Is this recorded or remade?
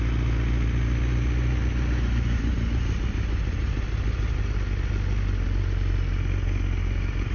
recorded